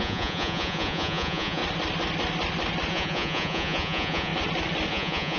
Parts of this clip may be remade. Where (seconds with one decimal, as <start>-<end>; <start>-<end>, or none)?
0.0-1.6; 2.9-4.3; 4.9-5.4